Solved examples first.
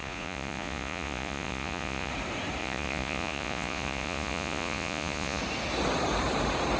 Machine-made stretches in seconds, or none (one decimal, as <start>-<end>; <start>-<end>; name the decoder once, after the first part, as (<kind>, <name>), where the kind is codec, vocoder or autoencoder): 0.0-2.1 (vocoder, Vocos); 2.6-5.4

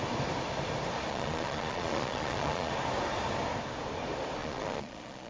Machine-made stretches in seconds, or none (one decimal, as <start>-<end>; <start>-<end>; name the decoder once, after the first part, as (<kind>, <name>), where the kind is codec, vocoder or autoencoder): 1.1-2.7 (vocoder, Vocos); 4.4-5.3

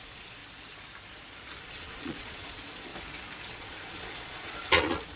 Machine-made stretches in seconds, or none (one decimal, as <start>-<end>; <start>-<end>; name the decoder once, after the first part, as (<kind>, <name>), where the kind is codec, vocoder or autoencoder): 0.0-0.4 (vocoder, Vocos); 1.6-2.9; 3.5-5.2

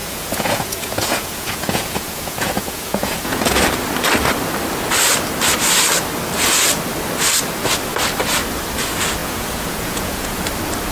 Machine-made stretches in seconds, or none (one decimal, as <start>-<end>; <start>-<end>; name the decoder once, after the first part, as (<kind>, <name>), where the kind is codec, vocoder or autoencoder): 0.0-3.6 (vocoder, Vocos); 9.2-10.4

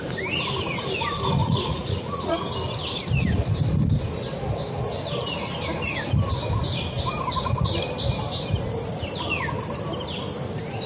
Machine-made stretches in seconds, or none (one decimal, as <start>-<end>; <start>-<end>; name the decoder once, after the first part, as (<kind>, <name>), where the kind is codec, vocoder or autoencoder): 1.4-2.4 (vocoder, Vocos)

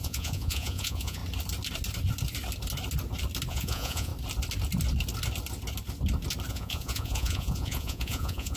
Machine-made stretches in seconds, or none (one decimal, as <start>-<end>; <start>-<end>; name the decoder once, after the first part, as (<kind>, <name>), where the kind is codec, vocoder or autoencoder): 0.0-1.2 (vocoder, Vocos); 3.5-4.1; 6.5-8.6

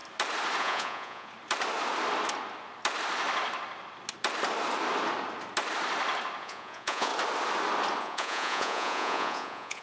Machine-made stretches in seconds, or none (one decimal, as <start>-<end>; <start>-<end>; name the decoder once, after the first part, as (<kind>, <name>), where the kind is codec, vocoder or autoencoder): 0.6-1.3 (vocoder, Vocos); 6.4-7.1; 8.0-9.8

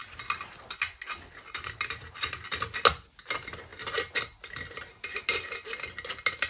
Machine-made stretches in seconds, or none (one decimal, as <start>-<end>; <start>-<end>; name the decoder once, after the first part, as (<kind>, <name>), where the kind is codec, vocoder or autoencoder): none